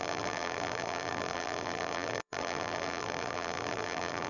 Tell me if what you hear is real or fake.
fake